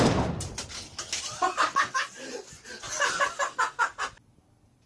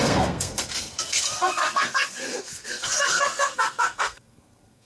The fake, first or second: second